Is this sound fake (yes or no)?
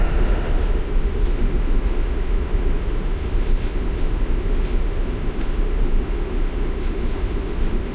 yes